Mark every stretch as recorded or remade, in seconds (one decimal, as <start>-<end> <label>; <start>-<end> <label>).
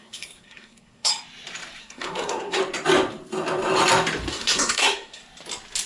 0.0-1.1 remade; 1.1-1.8 recorded; 1.8-2.6 remade; 2.6-4.3 recorded; 4.3-5.2 remade; 5.2-5.9 recorded